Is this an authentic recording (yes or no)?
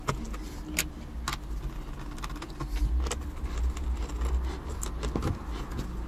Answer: yes